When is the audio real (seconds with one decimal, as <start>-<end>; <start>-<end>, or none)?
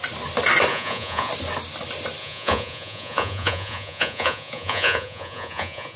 0.0-0.7; 1.3-2.2